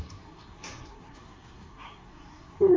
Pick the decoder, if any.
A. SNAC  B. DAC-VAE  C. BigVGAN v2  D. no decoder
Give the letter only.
A